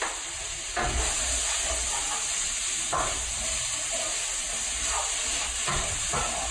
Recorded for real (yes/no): yes